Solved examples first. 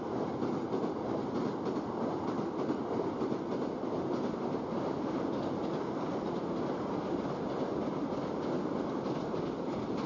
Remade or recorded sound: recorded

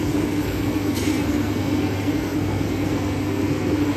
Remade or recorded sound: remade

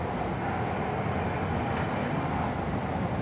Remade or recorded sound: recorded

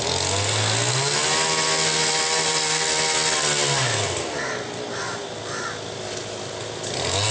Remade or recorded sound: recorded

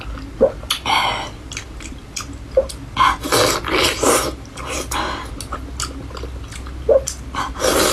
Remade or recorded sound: recorded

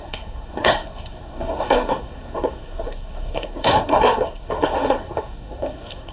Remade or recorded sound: remade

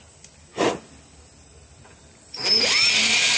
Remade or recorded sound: recorded